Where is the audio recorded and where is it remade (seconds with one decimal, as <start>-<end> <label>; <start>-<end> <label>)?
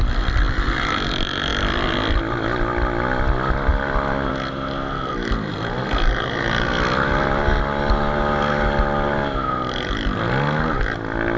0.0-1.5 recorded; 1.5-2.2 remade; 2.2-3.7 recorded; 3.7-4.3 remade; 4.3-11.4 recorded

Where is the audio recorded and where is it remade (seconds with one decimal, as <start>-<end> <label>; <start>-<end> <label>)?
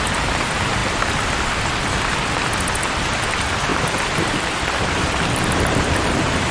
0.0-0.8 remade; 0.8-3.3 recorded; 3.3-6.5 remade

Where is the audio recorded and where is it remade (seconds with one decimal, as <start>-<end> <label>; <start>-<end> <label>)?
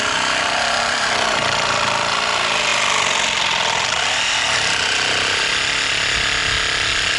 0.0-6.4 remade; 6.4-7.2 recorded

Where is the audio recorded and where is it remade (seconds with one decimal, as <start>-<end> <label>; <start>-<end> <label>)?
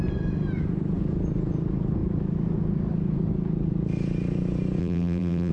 0.0-4.8 recorded; 4.8-5.5 remade